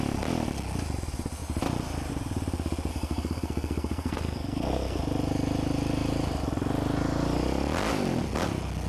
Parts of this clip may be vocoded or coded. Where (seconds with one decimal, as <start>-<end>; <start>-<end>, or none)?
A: 2.9-5.0